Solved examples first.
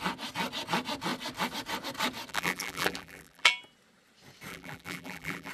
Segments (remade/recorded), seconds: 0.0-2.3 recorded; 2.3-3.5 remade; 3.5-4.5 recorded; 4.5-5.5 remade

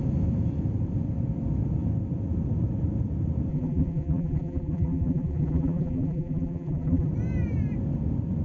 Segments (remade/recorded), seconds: 0.0-3.5 recorded; 3.5-7.1 remade; 7.1-8.4 recorded

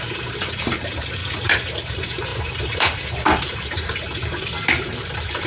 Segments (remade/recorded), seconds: 0.0-1.2 remade; 1.2-1.9 recorded; 1.9-5.5 remade

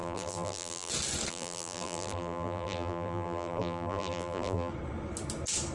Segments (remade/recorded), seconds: 0.0-0.9 remade; 0.9-1.3 recorded; 1.3-4.7 remade; 4.7-5.7 recorded

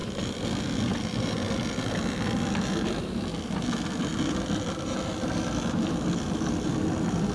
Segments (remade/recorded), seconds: 0.0-7.3 remade

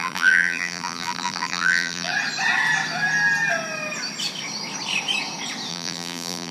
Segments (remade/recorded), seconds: 0.0-2.1 remade; 2.1-5.7 recorded; 5.7-6.5 remade